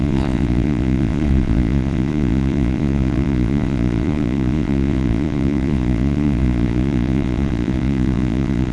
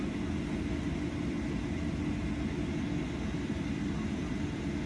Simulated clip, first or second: first